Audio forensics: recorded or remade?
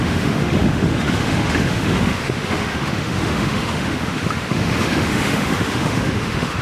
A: remade